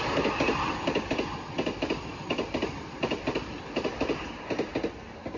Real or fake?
real